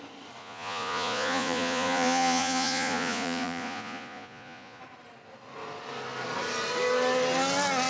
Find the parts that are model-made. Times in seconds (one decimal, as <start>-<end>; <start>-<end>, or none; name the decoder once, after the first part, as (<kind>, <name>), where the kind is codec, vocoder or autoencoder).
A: 0.4-4.8 (vocoder, Vocos)